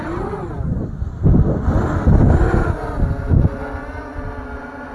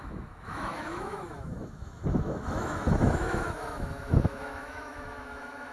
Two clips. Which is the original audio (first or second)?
first